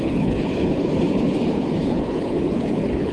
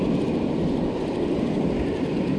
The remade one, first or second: first